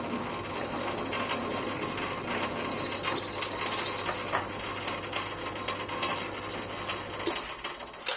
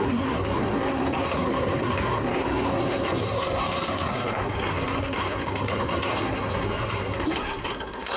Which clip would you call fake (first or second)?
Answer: second